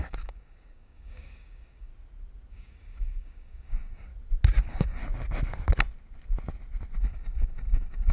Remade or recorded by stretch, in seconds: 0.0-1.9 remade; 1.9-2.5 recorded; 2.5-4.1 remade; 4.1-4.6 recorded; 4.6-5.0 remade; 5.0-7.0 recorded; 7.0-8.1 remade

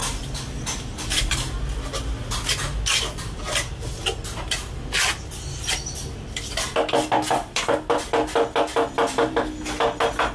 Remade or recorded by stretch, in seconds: 0.0-10.3 recorded

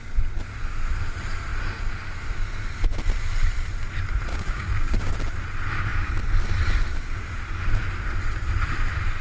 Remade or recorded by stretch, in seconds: 0.0-4.3 recorded; 4.3-5.1 remade; 5.1-9.2 recorded

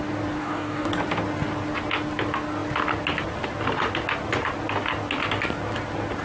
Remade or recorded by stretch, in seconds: 0.0-0.4 recorded; 0.4-0.9 remade; 0.9-6.2 recorded

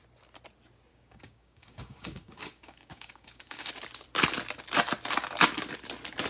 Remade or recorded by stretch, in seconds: 0.0-0.9 recorded; 0.9-3.7 remade; 3.7-6.3 recorded

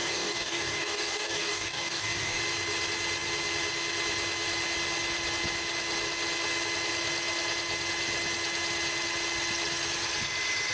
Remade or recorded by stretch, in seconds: 0.0-2.4 remade; 2.4-10.7 recorded